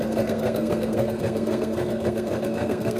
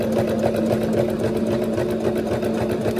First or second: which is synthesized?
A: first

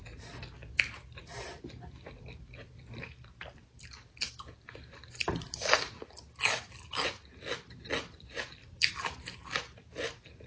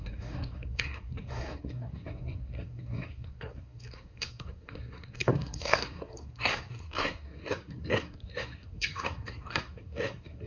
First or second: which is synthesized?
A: second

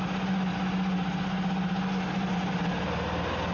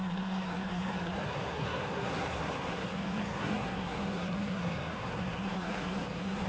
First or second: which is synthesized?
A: second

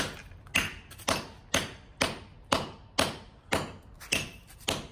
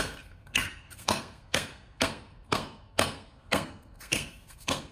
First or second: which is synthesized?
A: second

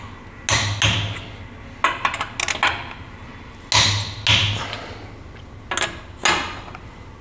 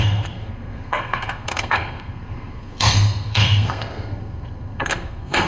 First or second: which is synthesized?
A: second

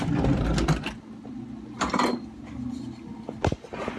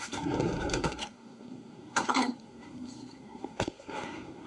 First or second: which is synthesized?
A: second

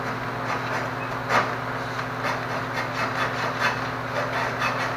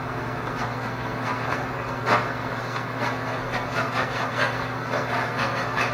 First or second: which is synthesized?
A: second